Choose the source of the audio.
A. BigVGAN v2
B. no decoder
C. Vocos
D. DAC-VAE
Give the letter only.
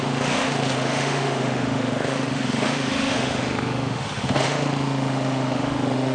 D